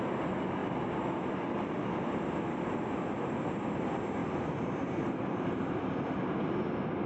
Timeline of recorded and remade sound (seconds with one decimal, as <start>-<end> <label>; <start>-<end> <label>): 0.0-0.6 recorded; 0.6-3.5 remade; 3.5-4.2 recorded; 4.2-5.6 remade; 5.6-7.1 recorded